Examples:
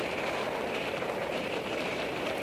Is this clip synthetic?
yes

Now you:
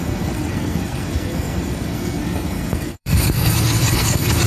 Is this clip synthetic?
yes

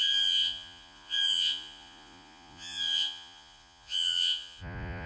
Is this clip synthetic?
yes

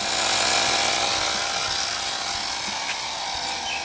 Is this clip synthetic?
no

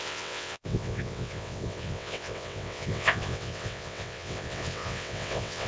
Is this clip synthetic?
yes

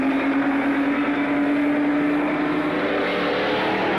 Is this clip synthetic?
no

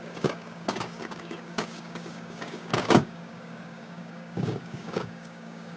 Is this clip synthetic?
yes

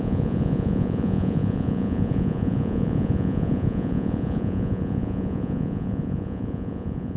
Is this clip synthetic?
yes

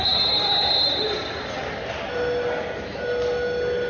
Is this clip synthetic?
no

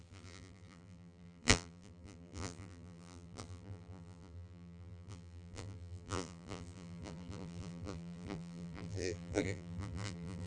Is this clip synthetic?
yes